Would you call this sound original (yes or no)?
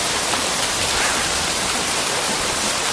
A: no